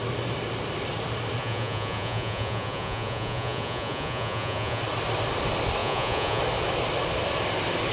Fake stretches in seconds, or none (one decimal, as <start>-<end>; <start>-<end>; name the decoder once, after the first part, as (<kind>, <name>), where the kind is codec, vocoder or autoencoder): 1.4-4.8 (vocoder, Vocos); 5.8-6.4

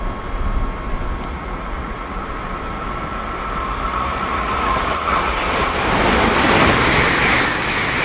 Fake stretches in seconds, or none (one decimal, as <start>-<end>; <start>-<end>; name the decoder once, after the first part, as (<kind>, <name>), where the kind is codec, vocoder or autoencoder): 1.3-2.2 (vocoder, Vocos); 3.9-5.3

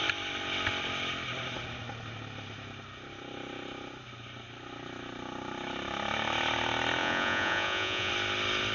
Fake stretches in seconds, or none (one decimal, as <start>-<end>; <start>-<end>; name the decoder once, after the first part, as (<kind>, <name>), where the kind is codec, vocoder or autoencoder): 7.0-8.1 (vocoder, Vocos)

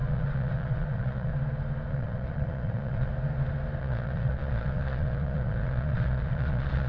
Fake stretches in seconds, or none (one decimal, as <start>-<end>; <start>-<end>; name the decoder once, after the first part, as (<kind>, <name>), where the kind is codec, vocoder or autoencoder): 0.0-1.3 (vocoder, Vocos); 1.9-3.1; 3.8-6.9

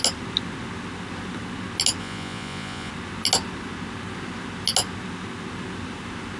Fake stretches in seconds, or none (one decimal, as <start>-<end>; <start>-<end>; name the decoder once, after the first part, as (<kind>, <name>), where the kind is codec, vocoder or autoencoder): 2.0-2.9 (vocoder, Vocos)

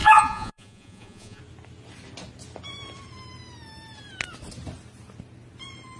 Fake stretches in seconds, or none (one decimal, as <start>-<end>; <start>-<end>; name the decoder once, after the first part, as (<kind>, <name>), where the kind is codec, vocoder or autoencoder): 0.0-1.4 (vocoder, Vocos)

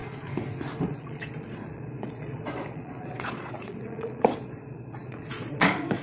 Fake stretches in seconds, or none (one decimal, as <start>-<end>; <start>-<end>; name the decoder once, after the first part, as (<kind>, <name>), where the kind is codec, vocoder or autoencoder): 0.9-6.0 (vocoder, Vocos)